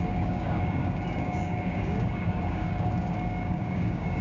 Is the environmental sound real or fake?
fake